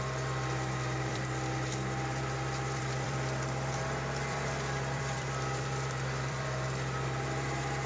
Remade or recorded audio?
remade